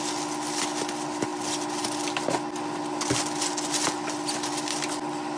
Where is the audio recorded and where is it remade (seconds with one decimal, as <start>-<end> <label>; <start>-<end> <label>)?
0.0-5.4 recorded